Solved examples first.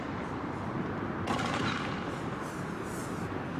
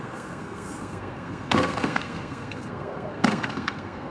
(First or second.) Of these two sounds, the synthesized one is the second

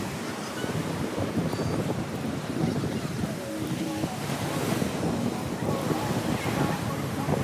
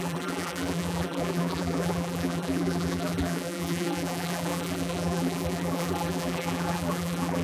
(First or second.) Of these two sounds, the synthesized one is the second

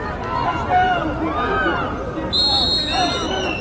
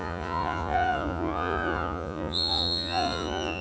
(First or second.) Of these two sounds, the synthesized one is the second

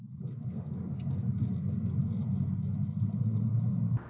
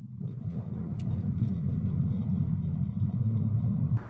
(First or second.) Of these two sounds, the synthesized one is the second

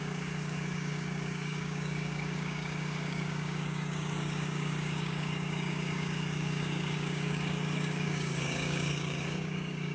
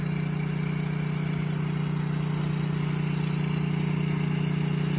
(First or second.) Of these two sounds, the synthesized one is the first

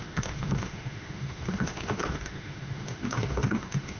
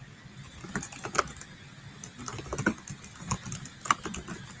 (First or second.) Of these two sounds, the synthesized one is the first